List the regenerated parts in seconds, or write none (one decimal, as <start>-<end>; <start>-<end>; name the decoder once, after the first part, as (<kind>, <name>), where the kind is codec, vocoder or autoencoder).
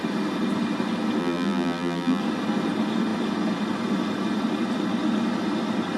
1.2-2.2 (vocoder, BigVGAN v2)